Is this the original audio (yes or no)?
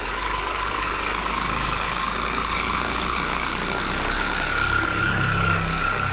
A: no